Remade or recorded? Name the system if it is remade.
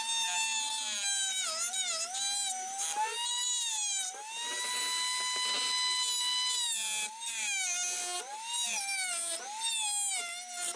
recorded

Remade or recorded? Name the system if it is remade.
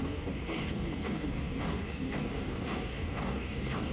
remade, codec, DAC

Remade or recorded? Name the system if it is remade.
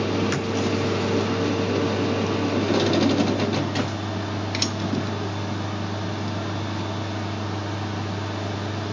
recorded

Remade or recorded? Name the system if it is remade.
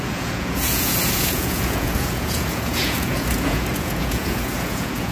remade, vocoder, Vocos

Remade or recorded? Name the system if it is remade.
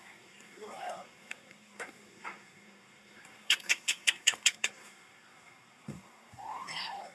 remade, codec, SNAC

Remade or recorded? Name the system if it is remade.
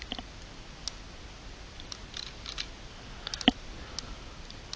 recorded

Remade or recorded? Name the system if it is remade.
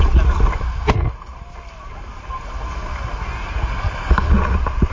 recorded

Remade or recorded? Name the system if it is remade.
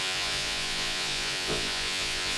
remade, vocoder, Vocos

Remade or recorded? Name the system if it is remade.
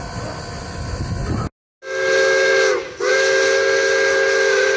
recorded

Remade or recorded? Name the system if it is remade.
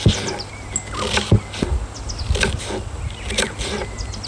recorded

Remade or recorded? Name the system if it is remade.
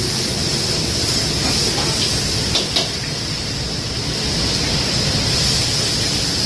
recorded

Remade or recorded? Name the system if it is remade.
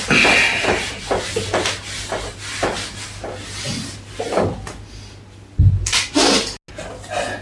recorded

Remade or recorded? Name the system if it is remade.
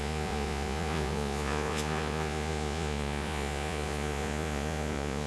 remade, vocoder, Vocos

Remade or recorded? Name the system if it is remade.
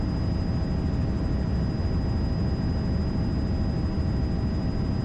recorded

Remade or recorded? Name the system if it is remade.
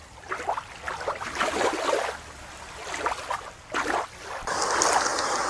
recorded